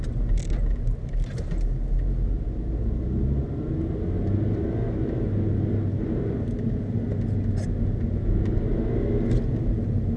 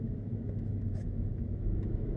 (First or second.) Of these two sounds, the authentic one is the first